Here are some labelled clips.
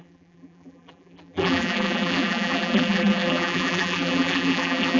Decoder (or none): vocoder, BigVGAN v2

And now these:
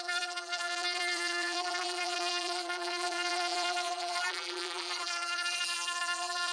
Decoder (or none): vocoder, BigVGAN v2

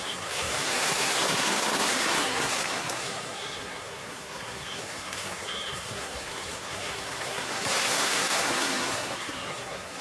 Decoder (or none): codec, SNAC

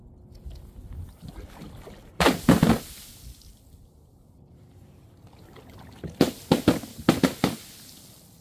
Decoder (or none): none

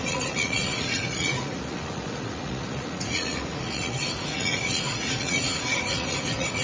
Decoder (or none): vocoder, Vocos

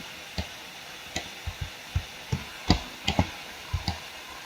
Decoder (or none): none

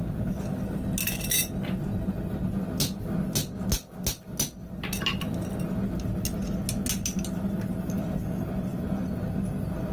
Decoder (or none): none